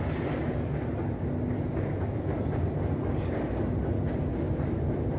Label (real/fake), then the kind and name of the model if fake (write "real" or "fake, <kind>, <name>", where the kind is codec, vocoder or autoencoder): real